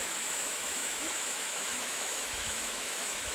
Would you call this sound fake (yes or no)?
yes